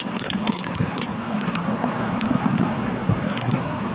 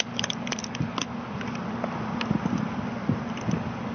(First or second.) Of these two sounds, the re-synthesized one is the first